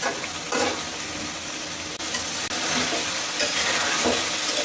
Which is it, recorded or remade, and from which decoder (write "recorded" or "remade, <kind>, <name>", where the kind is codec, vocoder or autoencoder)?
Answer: recorded